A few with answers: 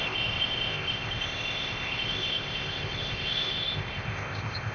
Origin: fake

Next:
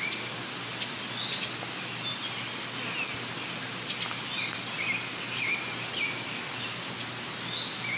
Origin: real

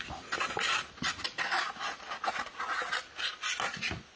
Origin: real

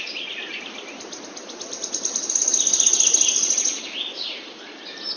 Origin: real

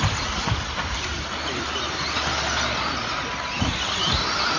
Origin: real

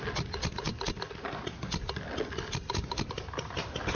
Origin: real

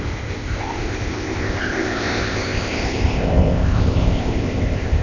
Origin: fake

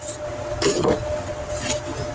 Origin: real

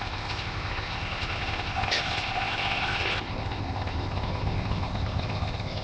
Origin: fake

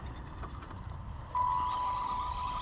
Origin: real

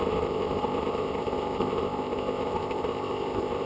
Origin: fake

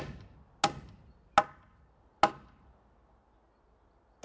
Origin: real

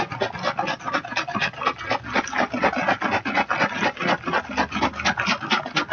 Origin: real